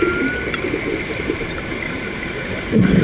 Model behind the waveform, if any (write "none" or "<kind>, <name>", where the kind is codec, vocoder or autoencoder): none